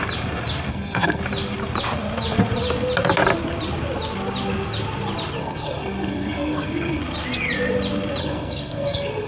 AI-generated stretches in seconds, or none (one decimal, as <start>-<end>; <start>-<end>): 0.7-1.2; 5.4-7.0; 8.2-9.3

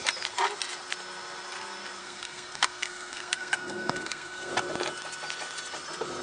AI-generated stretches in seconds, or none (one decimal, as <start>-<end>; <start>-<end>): 2.0-4.5

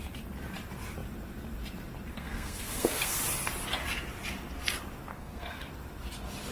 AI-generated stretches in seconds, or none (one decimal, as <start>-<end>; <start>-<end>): 2.1-3.2; 5.1-5.7